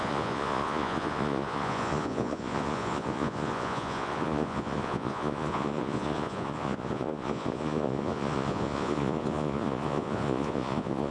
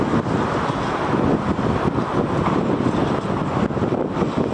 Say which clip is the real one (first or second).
second